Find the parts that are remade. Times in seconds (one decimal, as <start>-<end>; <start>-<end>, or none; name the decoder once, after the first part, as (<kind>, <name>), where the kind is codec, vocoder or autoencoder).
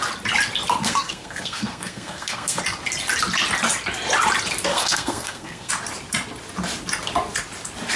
0.8-2.6 (codec, SNAC); 4.7-5.7